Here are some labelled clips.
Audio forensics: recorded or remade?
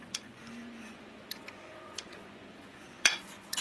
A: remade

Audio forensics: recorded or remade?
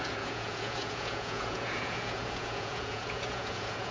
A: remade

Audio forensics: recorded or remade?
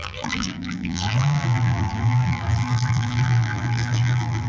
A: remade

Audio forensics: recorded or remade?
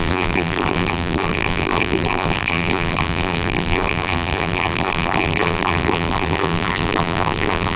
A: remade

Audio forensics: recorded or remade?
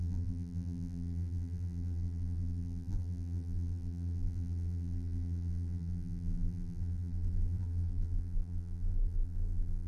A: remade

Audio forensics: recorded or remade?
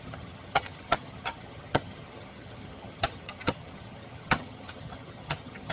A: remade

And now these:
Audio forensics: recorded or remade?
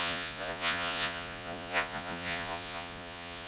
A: remade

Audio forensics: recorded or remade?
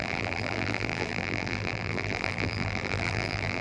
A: remade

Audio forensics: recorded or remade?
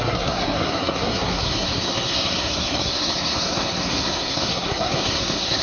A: remade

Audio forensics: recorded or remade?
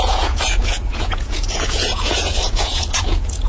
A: remade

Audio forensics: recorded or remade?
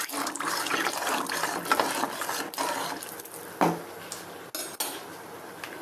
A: recorded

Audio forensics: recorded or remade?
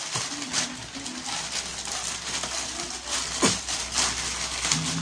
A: recorded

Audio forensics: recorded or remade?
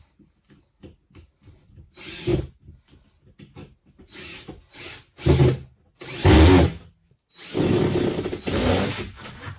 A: recorded